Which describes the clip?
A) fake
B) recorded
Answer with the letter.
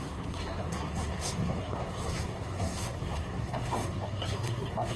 A